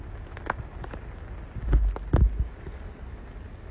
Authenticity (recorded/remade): recorded